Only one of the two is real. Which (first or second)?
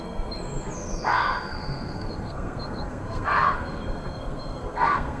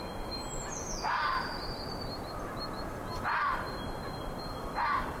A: second